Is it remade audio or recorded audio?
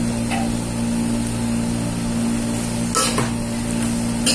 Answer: recorded